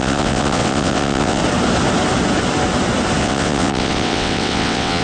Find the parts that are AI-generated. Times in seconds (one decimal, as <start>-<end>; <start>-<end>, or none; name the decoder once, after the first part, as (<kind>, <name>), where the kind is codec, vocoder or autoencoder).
0.0-1.4 (vocoder, WaveNeXt); 3.2-5.0